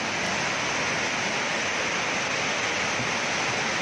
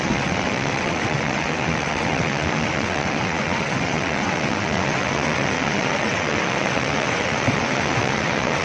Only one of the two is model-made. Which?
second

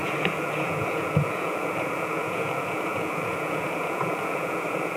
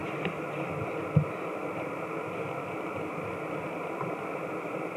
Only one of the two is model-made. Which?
first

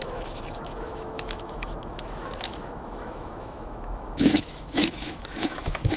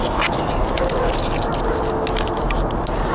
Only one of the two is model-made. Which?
first